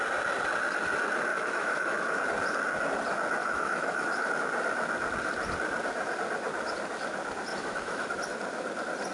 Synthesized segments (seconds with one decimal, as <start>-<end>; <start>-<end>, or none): 1.3-2.2; 3.4-4.3; 7.5-8.1